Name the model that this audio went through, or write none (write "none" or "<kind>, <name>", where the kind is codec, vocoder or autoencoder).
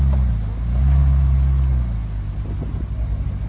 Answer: none